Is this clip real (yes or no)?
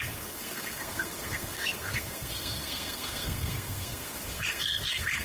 no